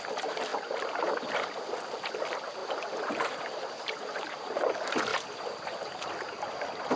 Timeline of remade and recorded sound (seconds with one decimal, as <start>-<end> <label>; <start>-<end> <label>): 0.0-2.6 recorded; 2.6-4.6 remade; 4.6-5.1 recorded; 5.1-5.9 remade; 5.9-7.0 recorded